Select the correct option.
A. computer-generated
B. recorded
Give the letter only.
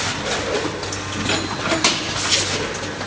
B